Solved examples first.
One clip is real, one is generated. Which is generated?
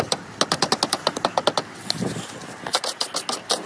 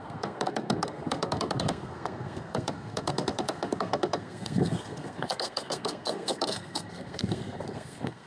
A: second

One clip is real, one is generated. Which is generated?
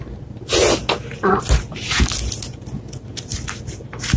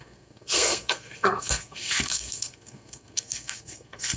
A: second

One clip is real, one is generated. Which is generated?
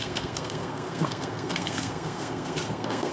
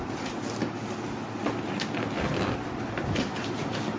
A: first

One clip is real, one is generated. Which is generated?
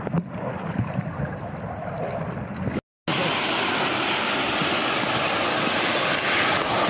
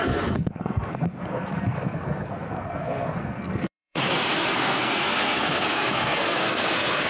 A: second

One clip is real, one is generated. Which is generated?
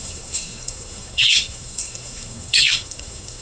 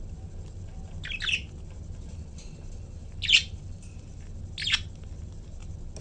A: first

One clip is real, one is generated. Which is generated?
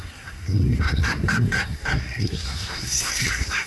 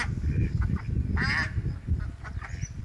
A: first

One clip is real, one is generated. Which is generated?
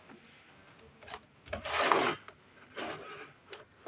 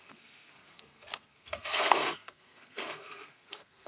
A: second